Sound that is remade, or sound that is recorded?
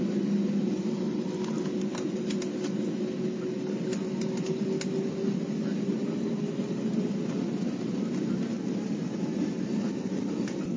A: recorded